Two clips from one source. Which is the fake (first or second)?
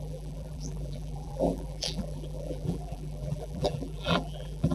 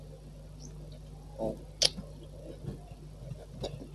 first